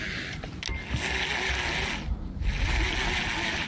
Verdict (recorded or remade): recorded